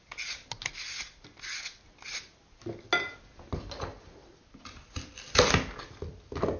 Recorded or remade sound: recorded